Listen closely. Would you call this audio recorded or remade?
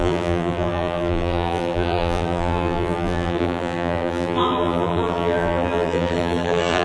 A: remade